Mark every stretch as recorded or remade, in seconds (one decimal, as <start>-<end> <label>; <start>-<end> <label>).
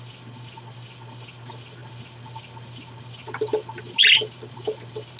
0.0-5.2 recorded